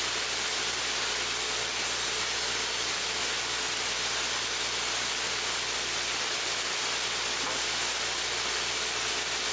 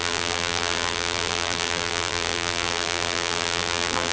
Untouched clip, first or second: first